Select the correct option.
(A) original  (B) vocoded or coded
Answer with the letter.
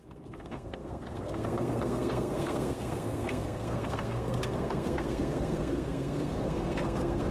B